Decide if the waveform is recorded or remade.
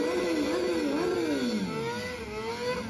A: recorded